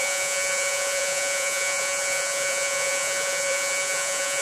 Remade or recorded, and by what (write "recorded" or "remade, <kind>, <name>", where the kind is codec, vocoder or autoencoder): remade, vocoder, Vocos